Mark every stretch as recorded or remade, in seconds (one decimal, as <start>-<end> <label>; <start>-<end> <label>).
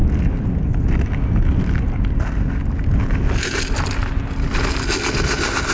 0.0-5.7 recorded